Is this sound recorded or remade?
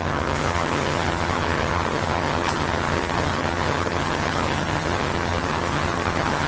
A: remade